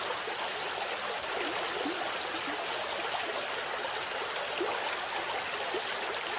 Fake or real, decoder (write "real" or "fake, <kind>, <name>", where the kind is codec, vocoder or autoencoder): real